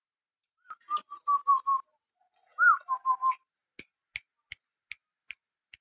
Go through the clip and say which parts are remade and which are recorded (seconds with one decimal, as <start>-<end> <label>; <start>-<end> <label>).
0.0-5.8 recorded